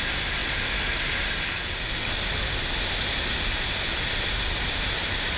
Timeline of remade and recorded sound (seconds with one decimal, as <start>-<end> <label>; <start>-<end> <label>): 0.0-5.4 recorded